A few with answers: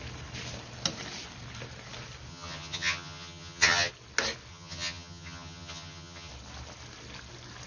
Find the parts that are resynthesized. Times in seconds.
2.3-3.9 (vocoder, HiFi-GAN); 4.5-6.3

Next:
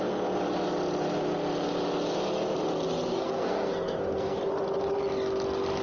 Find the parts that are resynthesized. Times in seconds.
3.1-4.4 (codec, SNAC)

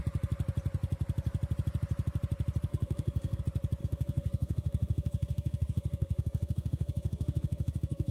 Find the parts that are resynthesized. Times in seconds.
2.7-3.4 (codec, SNAC); 3.8-8.1